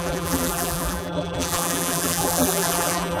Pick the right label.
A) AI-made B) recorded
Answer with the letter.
A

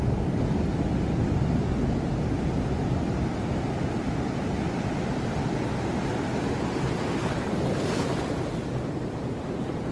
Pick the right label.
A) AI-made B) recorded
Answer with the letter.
B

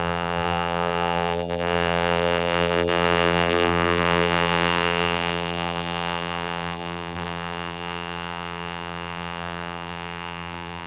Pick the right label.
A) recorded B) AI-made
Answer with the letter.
B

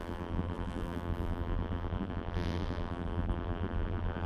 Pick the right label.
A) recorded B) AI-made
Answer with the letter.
B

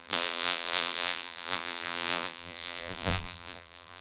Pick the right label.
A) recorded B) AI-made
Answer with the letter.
B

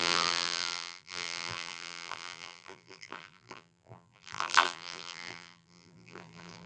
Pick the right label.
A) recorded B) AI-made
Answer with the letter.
B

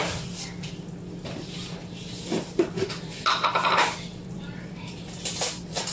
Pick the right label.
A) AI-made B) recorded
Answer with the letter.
A